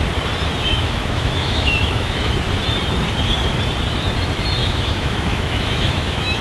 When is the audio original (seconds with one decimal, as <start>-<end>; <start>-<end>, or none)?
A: 0.0-0.7; 2.3-4.6